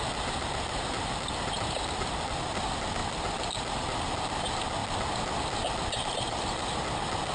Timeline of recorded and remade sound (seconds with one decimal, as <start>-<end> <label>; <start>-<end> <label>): 0.0-7.3 recorded

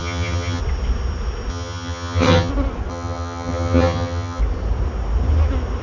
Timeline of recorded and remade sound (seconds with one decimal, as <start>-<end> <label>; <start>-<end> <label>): 0.0-0.6 remade; 0.6-1.5 recorded; 1.5-2.5 remade; 2.5-2.9 recorded; 2.9-4.4 remade; 4.4-5.8 recorded

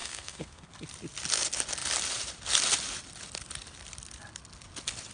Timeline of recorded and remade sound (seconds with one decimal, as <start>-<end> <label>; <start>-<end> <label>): 0.0-0.7 remade; 0.7-5.1 recorded

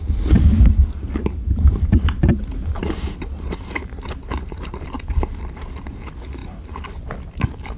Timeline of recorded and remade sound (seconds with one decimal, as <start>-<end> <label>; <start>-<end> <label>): 0.0-0.5 recorded; 0.5-4.7 remade; 4.7-6.4 recorded; 6.4-7.0 remade; 7.0-7.8 recorded

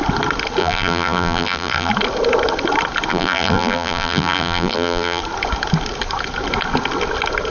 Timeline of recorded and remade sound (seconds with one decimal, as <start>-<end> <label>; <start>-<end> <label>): 0.0-0.6 recorded; 0.6-1.9 remade; 1.9-3.1 recorded; 3.1-5.2 remade; 5.2-7.5 recorded

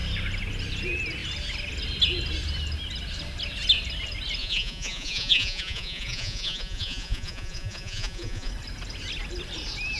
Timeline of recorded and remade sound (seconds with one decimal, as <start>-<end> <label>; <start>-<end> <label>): 0.0-4.4 recorded; 4.4-8.5 remade; 8.5-10.0 recorded

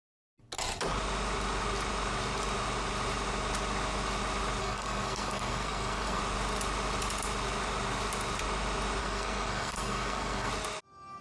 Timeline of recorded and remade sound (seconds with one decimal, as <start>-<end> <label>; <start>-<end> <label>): 0.0-4.6 recorded; 4.6-6.2 remade; 6.2-9.0 recorded; 9.0-10.5 remade; 10.5-11.2 recorded